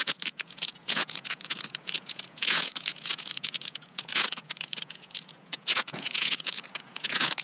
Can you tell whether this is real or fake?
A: fake